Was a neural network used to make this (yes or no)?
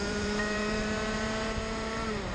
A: yes